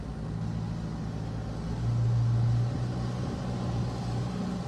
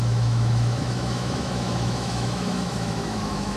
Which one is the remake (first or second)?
second